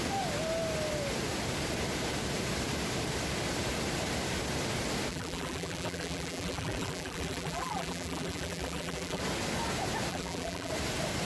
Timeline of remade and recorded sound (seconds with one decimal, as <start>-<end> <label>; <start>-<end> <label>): 0.0-5.1 recorded; 5.1-9.2 remade; 9.2-10.1 recorded; 10.1-10.7 remade; 10.7-11.2 recorded